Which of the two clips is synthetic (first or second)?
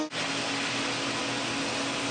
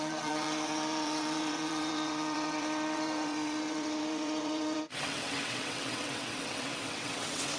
second